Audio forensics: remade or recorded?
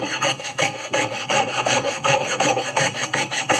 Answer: remade